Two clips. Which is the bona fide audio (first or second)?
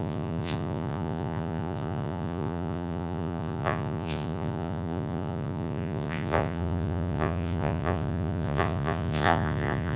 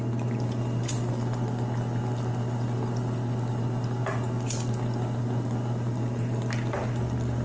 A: second